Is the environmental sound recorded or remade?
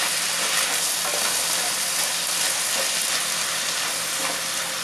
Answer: recorded